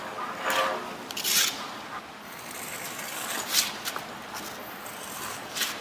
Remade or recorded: recorded